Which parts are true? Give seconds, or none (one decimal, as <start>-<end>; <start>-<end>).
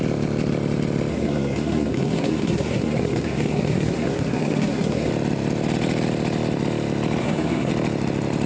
0.0-1.1; 5.1-7.2; 7.7-8.5